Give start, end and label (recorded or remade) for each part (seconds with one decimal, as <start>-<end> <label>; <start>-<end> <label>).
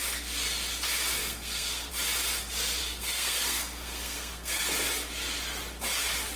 0.0-1.2 recorded; 1.2-1.9 remade; 1.9-2.8 recorded; 2.8-4.6 remade; 4.6-6.4 recorded